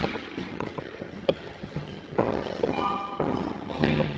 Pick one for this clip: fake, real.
fake